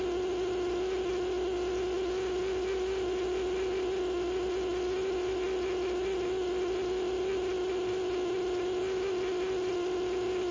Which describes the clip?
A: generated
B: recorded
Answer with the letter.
B